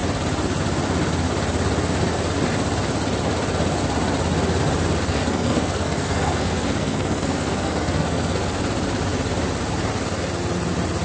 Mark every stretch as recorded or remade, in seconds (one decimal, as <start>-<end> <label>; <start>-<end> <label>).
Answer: 0.0-5.1 recorded; 5.1-8.6 remade; 8.6-11.0 recorded